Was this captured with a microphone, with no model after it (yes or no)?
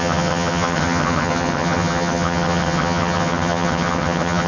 no